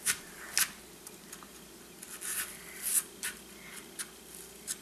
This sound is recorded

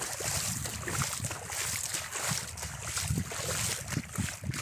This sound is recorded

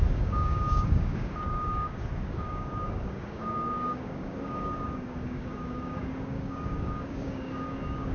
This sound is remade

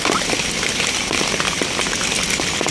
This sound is recorded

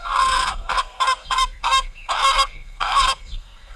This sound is remade